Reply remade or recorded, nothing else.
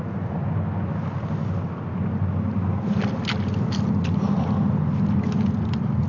recorded